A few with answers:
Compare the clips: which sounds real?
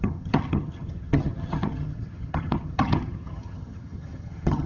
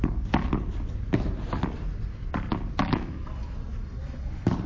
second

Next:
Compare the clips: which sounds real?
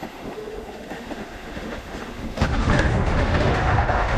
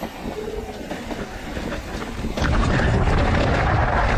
second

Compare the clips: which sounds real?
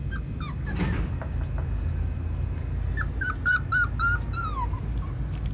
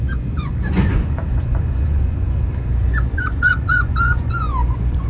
first